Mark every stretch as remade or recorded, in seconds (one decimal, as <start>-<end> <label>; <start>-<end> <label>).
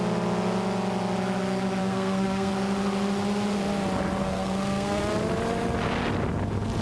0.0-1.8 recorded; 1.8-2.5 remade; 2.5-4.2 recorded; 4.2-5.0 remade; 5.0-6.8 recorded